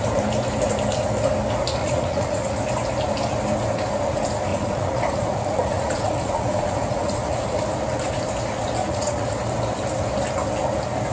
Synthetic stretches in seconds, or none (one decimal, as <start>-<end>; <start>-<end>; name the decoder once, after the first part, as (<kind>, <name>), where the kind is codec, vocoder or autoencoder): 1.8-2.5 (vocoder, Vocos); 4.5-7.6; 8.8-9.3